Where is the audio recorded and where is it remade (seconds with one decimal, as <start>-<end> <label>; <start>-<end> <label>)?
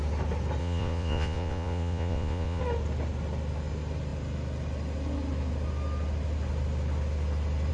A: 0.0-0.6 recorded; 0.6-2.6 remade; 2.6-7.7 recorded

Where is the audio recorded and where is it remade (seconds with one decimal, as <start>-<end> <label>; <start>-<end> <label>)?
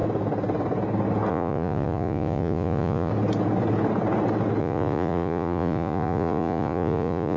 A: 0.0-1.3 recorded; 1.3-3.1 remade; 3.1-4.6 recorded; 4.6-7.4 remade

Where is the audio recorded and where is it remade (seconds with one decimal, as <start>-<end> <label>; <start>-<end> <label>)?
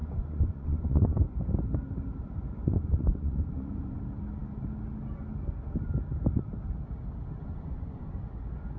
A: 0.0-1.2 remade; 1.2-2.6 recorded; 2.6-4.0 remade; 4.0-7.4 recorded; 7.4-8.0 remade; 8.0-8.8 recorded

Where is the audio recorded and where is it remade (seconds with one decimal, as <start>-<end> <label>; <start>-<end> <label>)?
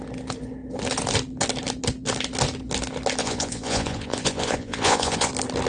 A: 0.0-3.2 recorded; 3.2-5.3 remade; 5.3-5.7 recorded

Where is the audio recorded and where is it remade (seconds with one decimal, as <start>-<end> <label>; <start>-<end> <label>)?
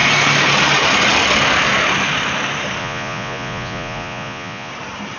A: 0.0-2.8 recorded; 2.8-4.7 remade; 4.7-5.2 recorded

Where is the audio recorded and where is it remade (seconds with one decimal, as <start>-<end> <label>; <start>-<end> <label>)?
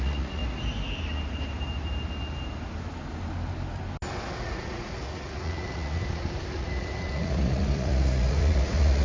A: 0.0-0.4 remade; 0.4-4.4 recorded; 4.4-6.0 remade; 6.0-6.5 recorded; 6.5-9.0 remade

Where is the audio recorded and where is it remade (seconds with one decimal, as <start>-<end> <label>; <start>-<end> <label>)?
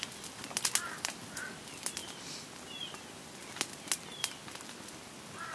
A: 0.0-5.5 recorded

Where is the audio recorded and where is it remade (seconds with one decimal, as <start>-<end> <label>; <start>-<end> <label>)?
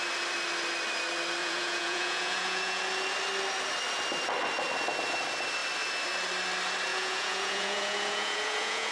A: 0.0-1.4 recorded; 1.4-2.8 remade; 2.8-6.9 recorded; 6.9-8.9 remade